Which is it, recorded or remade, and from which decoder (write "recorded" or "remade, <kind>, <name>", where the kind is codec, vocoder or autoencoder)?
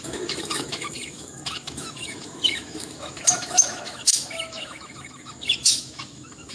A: remade, autoencoder, DAC-VAE